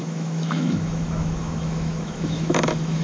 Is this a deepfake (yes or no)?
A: yes